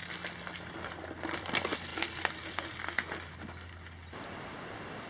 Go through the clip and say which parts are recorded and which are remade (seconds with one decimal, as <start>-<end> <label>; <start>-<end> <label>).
0.0-5.1 recorded